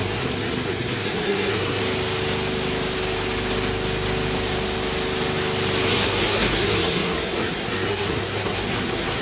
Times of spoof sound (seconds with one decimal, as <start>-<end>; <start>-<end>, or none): 0.0-1.8; 5.9-9.2